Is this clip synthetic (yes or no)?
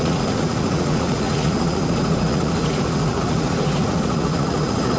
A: yes